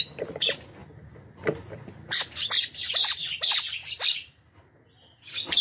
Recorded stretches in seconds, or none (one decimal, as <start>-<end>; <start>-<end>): 3.8-5.6